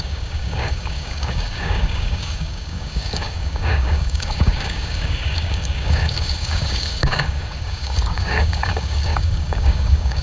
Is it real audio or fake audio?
fake